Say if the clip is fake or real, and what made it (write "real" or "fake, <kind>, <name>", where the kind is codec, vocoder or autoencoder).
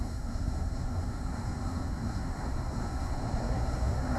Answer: fake, codec, SNAC